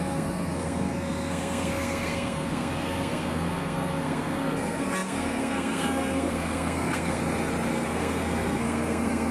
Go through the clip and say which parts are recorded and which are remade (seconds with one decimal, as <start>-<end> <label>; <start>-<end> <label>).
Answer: 0.0-7.2 remade; 7.2-7.7 recorded; 7.7-9.3 remade

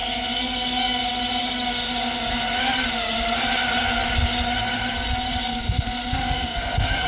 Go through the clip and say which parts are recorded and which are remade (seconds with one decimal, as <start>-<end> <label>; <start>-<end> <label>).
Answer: 0.0-5.5 recorded; 5.5-7.1 remade